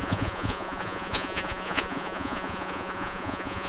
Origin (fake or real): fake